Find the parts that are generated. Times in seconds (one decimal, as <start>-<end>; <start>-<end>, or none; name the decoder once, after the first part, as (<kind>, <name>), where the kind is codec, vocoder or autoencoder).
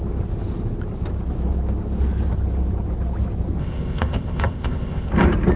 3.6-5.1 (codec, ZipCodec)